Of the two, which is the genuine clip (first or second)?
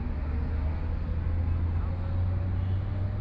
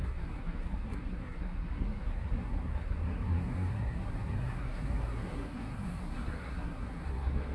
first